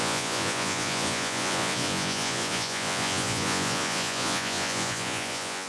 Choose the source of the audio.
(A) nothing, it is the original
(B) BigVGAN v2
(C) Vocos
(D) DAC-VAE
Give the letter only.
C